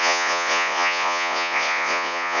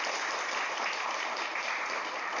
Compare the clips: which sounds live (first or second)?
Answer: second